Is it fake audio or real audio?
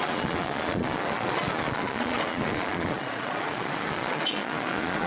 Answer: fake